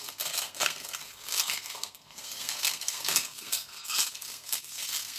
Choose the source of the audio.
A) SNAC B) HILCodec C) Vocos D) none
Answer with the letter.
A